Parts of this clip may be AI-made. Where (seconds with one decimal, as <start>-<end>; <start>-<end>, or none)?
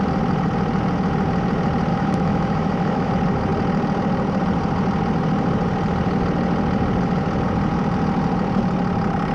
1.9-3.1